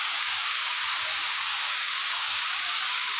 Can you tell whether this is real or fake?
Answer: fake